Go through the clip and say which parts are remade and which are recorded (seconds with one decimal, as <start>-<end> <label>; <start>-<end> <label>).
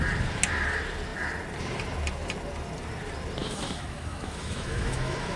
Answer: 0.0-3.4 recorded; 3.4-5.4 remade